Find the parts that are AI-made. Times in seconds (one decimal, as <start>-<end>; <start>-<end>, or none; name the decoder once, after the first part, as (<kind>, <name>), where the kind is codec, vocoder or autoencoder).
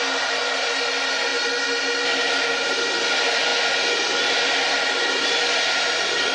none